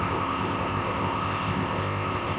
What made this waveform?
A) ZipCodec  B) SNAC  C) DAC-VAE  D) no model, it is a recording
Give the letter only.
A